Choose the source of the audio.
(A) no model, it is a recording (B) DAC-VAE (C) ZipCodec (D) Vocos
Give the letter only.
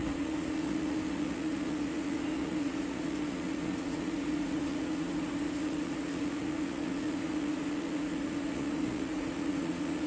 D